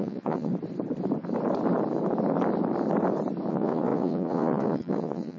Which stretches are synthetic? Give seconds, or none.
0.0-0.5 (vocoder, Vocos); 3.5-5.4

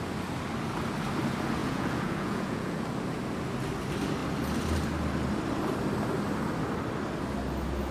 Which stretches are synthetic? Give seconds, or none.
1.6-2.7 (vocoder, Vocos)

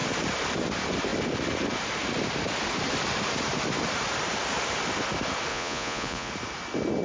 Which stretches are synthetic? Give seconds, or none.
5.5-6.3 (vocoder, Vocos)

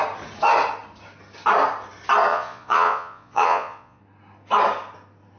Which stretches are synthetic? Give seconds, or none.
2.3-4.0 (vocoder, Vocos)

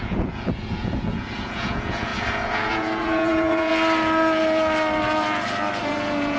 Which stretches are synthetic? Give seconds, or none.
0.0-3.7 (vocoder, Vocos); 5.8-6.4